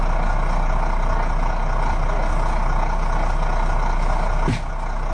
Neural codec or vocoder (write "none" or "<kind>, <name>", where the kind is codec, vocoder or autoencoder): none